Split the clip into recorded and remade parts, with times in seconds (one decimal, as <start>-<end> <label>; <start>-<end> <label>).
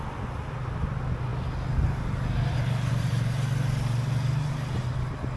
0.0-5.4 recorded